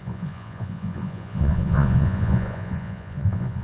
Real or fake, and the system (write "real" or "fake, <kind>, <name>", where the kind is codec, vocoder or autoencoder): fake, vocoder, Vocos